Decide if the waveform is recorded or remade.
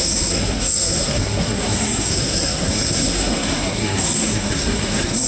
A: remade